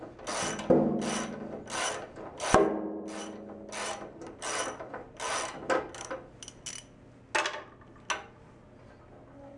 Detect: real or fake real